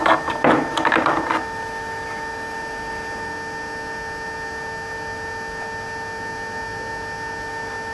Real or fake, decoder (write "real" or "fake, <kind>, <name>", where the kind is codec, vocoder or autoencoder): real